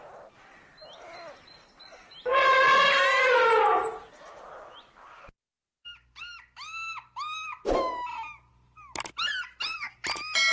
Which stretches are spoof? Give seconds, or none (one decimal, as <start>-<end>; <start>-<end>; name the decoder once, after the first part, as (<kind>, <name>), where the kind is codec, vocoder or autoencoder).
none